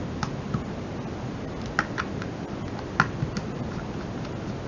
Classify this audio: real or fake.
real